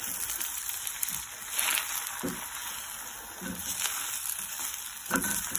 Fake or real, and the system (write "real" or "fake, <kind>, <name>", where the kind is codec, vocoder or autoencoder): real